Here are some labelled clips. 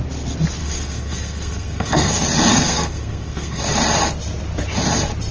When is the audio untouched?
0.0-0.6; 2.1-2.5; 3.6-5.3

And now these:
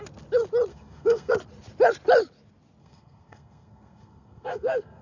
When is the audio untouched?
0.0-0.7; 1.3-2.8

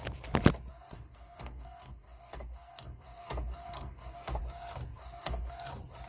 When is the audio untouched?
0.0-0.7; 4.4-4.9; 5.5-6.1

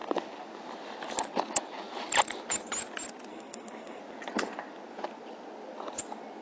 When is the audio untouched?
0.0-3.3; 4.0-6.4

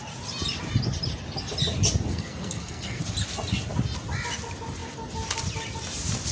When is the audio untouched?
0.0-2.1; 3.0-6.3